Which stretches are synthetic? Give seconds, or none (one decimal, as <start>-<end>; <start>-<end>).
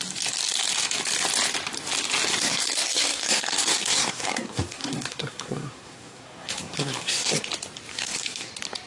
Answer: 2.4-7.4; 7.9-8.5